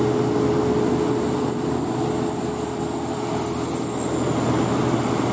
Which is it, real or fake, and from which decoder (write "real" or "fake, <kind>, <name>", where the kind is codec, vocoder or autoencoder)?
real